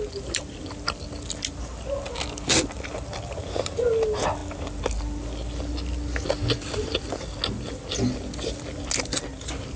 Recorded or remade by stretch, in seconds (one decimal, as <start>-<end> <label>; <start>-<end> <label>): 0.0-9.8 recorded